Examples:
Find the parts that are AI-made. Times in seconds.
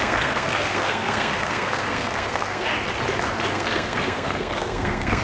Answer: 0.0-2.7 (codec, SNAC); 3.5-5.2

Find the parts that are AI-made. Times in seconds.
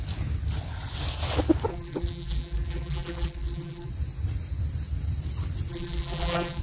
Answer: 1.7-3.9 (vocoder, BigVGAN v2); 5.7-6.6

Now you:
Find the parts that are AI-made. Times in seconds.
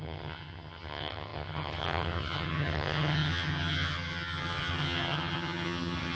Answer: 0.0-6.2 (vocoder, HiFi-GAN)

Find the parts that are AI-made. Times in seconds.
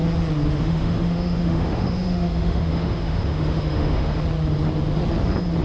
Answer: 0.6-4.2 (autoencoder, DAC-VAE)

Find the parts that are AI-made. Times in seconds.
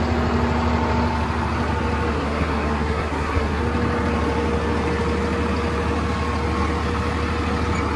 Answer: 2.1-3.6 (codec, SNAC)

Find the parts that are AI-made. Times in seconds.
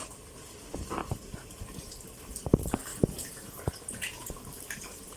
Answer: 2.9-4.3 (vocoder, Vocos)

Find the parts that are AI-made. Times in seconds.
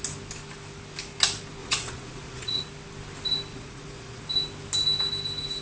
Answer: 1.6-2.6 (vocoder, Vocos); 3.5-4.2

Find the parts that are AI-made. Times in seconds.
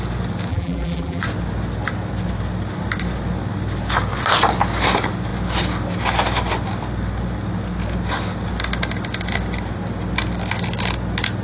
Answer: 0.5-1.2 (vocoder, BigVGAN v2)